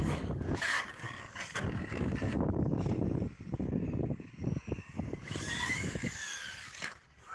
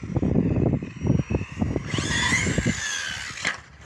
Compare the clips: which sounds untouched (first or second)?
second